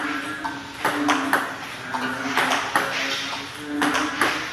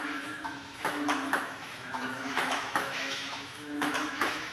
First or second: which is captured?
first